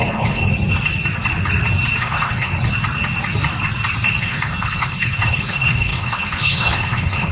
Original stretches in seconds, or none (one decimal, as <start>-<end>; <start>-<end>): 0.4-2.0; 2.5-4.2